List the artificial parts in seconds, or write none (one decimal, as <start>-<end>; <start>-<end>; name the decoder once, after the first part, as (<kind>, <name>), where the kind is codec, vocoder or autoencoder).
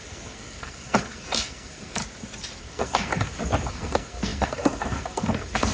0.0-2.0 (codec, SNAC); 2.6-3.1; 3.7-5.7